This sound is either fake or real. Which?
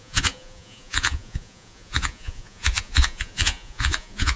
fake